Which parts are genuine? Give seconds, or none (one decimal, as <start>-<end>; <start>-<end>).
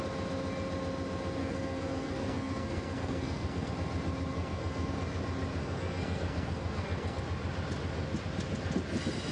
0.0-1.4; 3.7-4.3; 4.9-5.6; 7.2-9.3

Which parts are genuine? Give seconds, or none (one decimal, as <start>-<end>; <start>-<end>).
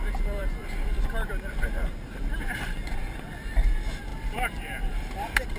0.0-0.4; 1.3-4.1